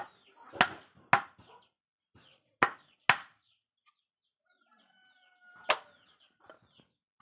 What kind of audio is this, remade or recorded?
recorded